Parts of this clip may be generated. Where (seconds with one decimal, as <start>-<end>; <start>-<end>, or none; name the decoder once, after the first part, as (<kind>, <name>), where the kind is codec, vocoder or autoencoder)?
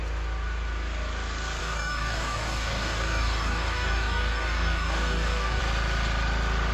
1.6-5.6 (codec, DAC)